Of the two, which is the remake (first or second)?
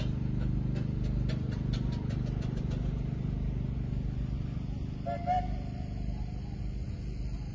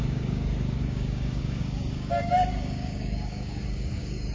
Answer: second